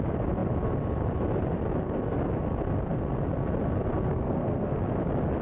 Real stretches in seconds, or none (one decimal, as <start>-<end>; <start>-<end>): 0.0-4.1; 4.8-5.4